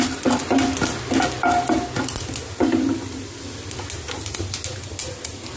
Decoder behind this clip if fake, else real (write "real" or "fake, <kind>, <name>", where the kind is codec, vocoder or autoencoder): real